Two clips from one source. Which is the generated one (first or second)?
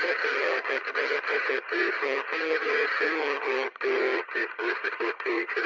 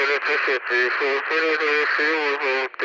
first